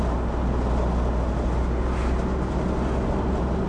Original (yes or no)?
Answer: yes